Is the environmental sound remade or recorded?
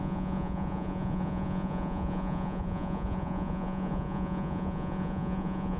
remade